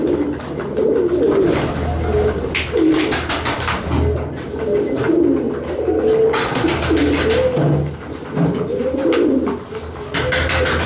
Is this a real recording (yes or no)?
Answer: yes